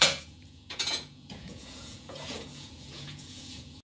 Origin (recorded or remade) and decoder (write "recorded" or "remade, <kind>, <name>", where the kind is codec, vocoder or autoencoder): remade, vocoder, Vocos